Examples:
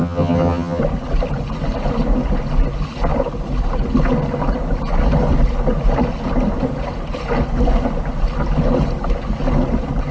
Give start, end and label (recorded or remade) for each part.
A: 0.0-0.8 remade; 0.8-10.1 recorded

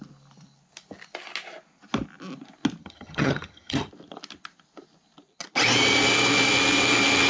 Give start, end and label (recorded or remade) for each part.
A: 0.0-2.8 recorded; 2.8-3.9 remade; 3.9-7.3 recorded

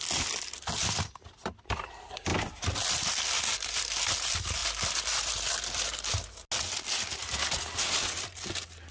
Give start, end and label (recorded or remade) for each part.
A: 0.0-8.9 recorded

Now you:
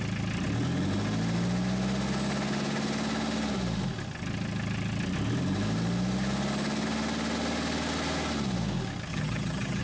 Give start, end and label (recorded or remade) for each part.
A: 0.0-9.1 recorded; 9.1-9.8 remade

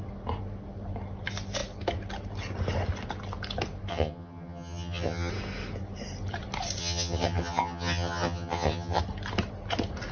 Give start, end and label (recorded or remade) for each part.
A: 0.0-3.9 recorded; 3.9-5.3 remade; 5.3-6.8 recorded; 6.8-9.0 remade; 9.0-10.1 recorded

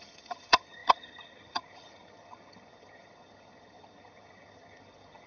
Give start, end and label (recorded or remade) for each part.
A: 0.0-5.3 remade